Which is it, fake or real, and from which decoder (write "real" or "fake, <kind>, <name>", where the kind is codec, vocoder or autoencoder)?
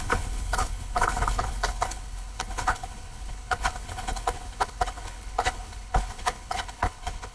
fake, codec, HILCodec